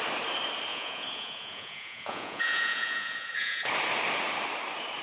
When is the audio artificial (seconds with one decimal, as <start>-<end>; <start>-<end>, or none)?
0.7-3.7